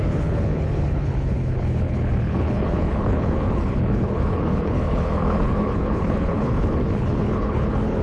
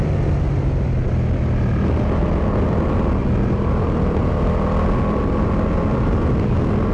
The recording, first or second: second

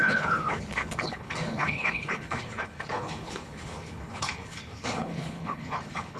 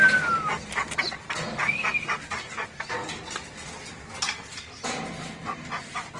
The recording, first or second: second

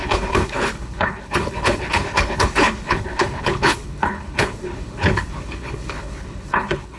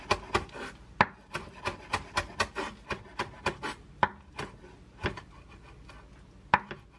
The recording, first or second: second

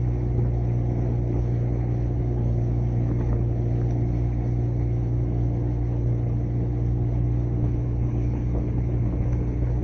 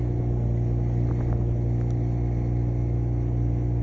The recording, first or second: second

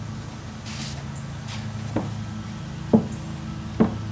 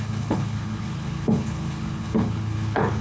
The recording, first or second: first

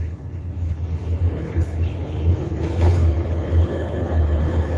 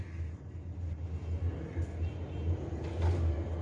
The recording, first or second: second